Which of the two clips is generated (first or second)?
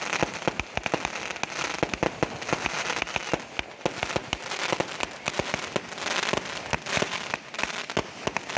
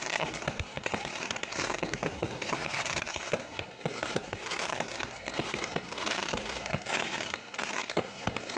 second